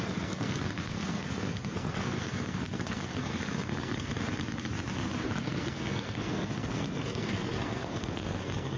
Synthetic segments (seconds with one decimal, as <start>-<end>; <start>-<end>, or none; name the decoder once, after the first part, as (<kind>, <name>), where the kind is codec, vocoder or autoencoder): 0.0-4.1 (codec, SNAC); 5.4-8.8